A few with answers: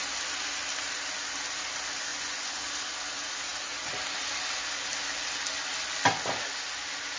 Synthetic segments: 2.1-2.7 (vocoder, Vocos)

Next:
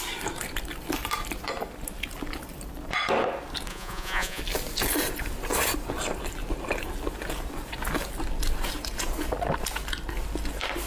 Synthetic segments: 3.7-4.4 (vocoder, Vocos)

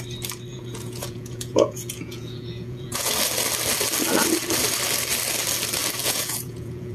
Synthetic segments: 0.5-3.1 (vocoder, Vocos); 6.0-6.9

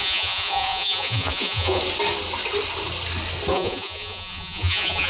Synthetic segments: 0.0-1.8 (vocoder, Vocos); 3.5-5.1

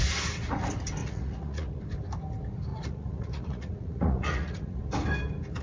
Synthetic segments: 1.0-1.8 (vocoder, Vocos); 2.7-4.8